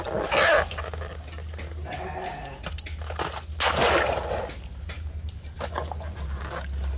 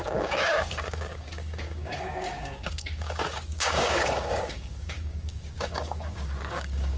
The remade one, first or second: second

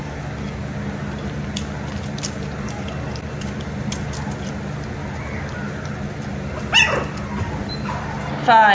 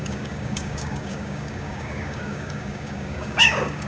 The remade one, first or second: second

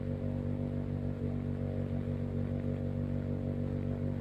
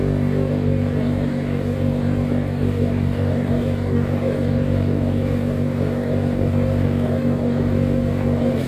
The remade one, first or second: second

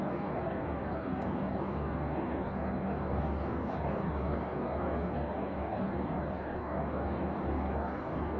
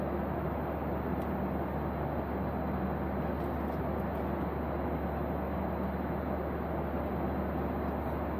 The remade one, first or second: first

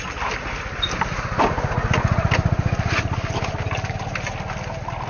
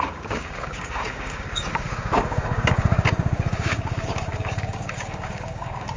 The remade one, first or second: second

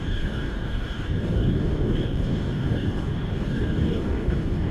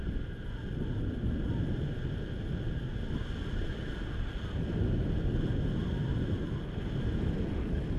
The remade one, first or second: first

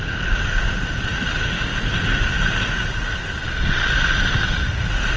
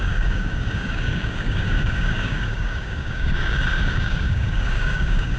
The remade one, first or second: second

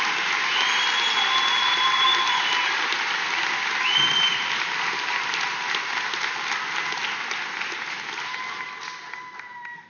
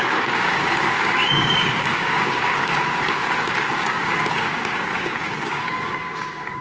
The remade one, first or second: second